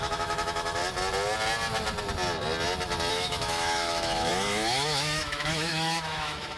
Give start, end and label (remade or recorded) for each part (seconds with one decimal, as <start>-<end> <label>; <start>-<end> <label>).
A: 0.0-0.8 remade; 0.8-3.1 recorded; 3.1-6.6 remade